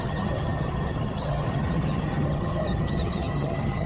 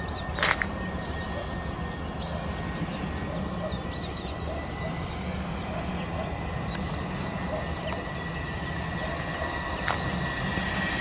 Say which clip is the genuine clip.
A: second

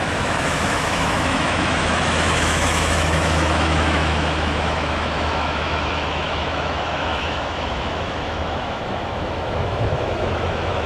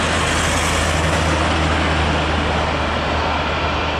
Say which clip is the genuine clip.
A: second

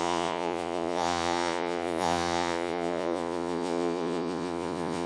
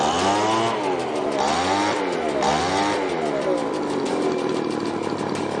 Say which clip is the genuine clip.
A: second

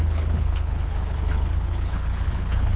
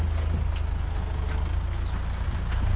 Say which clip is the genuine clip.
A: second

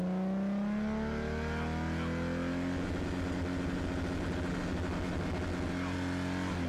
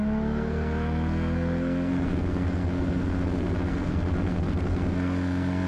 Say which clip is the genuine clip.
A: first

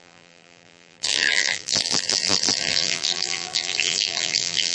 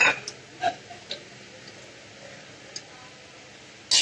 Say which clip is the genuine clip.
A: second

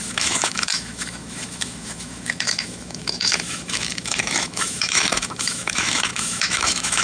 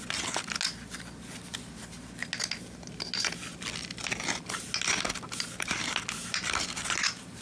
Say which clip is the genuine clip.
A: second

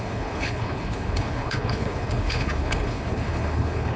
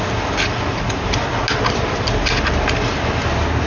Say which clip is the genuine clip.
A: second